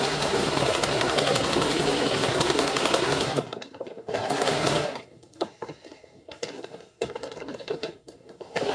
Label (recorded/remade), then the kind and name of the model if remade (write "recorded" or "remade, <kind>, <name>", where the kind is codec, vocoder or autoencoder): remade, codec, SNAC